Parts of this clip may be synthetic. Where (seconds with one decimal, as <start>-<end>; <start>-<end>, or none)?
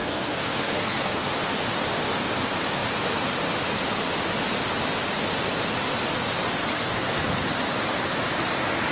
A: 0.0-1.3; 6.6-7.2